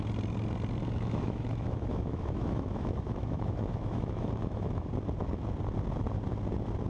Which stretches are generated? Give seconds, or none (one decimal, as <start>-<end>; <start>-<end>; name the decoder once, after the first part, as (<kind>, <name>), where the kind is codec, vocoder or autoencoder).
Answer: 0.8-4.9 (autoencoder, DAC-VAE)